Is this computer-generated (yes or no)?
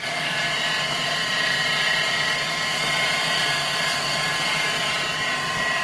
yes